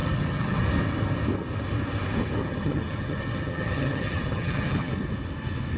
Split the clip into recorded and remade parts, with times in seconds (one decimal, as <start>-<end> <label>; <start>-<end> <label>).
0.0-0.6 remade; 0.6-2.4 recorded; 2.4-4.9 remade; 4.9-5.8 recorded